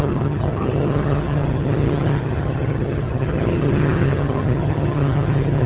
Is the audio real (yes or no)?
no